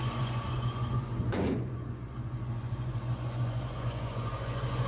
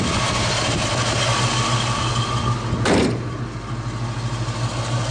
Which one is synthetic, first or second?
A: first